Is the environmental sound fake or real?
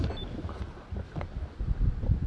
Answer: real